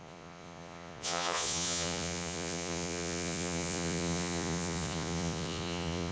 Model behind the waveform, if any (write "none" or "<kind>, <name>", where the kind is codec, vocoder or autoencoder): vocoder, Vocos